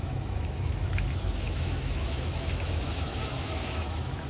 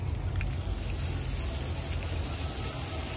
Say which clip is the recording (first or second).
second